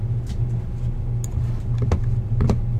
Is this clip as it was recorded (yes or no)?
yes